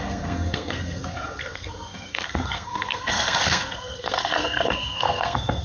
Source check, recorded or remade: remade